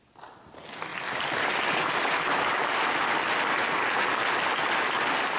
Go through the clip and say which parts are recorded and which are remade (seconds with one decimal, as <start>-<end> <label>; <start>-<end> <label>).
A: 0.0-5.4 recorded